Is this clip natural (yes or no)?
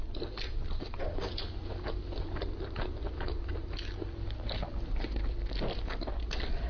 yes